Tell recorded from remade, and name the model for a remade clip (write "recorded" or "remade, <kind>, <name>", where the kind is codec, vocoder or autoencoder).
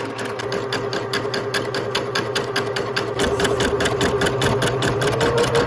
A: recorded